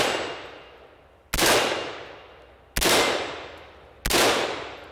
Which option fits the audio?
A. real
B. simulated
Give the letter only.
A